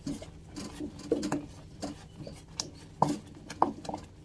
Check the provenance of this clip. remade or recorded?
recorded